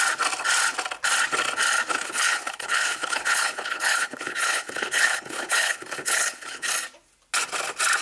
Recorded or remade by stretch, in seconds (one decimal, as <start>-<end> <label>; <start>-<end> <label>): 0.0-1.9 recorded; 1.9-6.7 remade; 6.7-8.0 recorded